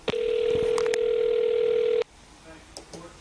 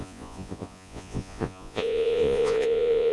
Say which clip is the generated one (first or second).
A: second